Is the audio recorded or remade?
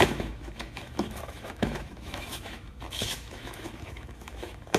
remade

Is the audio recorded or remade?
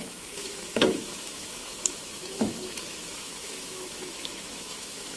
remade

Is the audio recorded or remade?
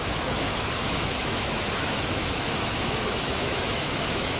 remade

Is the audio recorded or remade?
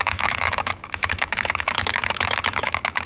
remade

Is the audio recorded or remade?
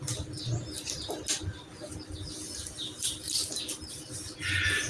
recorded